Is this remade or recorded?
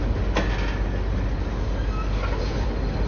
recorded